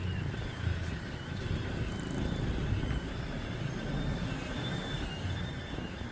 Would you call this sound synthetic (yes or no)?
no